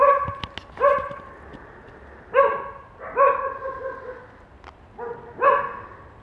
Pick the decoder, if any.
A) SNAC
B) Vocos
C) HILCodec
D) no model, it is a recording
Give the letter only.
D